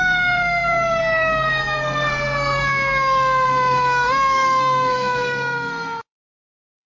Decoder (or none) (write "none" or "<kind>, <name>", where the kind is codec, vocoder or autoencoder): codec, SNAC